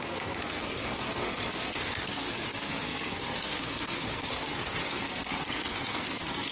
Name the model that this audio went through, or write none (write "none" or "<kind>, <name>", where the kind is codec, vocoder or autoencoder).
codec, SNAC